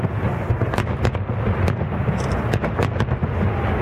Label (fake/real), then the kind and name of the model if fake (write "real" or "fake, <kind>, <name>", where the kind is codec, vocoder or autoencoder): real